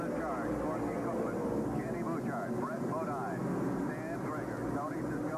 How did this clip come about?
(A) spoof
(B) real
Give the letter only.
B